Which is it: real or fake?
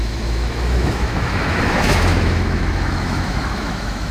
fake